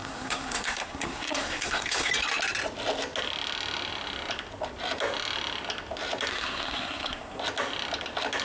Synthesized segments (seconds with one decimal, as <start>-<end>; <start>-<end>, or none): 0.0-2.1; 6.3-7.4